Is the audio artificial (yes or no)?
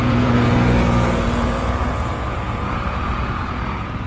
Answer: yes